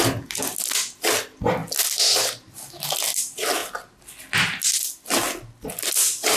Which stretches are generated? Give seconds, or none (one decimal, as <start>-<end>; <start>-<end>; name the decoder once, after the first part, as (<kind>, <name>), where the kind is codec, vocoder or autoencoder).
none